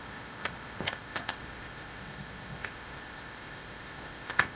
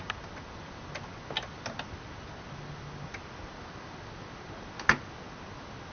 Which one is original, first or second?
second